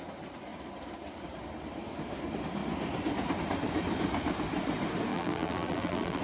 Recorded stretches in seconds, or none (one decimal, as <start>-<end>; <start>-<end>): 0.0-5.1